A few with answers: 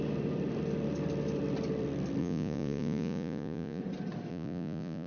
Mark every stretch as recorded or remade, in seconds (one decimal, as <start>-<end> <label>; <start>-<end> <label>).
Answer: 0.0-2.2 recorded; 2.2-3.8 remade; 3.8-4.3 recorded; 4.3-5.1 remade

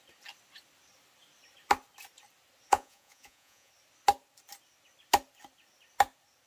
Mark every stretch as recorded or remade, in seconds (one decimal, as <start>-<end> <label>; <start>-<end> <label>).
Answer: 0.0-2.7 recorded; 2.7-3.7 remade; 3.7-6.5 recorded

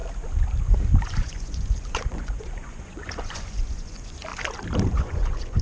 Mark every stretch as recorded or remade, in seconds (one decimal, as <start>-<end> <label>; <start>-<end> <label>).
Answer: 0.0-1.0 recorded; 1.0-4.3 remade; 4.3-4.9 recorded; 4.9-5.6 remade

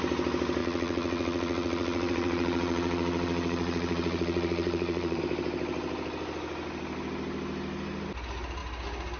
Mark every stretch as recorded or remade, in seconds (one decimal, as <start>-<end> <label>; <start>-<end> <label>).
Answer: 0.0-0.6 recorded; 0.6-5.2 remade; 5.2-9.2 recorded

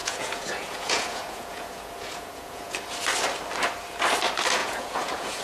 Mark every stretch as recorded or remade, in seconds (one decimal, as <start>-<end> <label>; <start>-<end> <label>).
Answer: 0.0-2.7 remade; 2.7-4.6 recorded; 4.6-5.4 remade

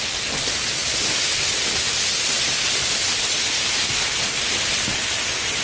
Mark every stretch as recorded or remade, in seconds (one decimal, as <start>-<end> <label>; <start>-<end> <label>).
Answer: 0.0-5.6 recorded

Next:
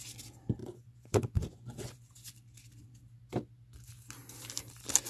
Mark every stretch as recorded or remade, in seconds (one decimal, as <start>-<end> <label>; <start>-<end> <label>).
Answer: 0.0-0.6 recorded; 0.6-2.1 remade; 2.1-5.1 recorded